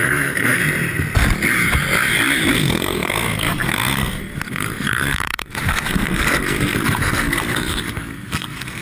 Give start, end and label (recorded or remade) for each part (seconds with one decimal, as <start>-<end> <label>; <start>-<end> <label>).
0.0-0.6 remade; 0.6-2.5 recorded; 2.5-8.8 remade